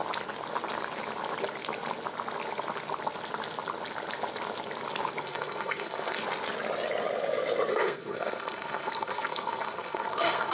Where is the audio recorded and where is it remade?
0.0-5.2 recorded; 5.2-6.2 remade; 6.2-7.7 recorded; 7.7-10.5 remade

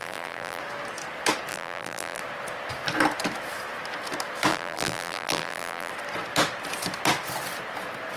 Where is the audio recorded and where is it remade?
0.0-0.6 remade; 0.6-1.5 recorded; 1.5-2.2 remade; 2.2-4.5 recorded; 4.5-5.9 remade; 5.9-8.2 recorded

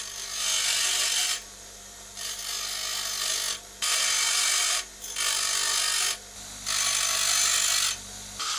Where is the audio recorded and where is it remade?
0.0-1.2 recorded; 1.2-2.4 remade; 2.4-8.6 recorded

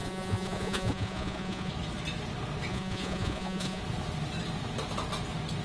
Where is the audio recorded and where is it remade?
0.0-1.7 remade; 1.7-2.7 recorded; 2.7-3.8 remade; 3.8-5.6 recorded

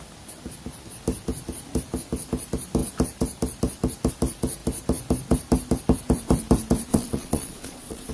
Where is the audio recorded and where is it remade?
0.0-6.9 recorded; 6.9-8.1 remade

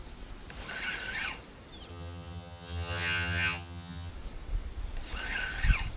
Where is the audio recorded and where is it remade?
0.0-1.9 recorded; 1.9-4.1 remade; 4.1-6.0 recorded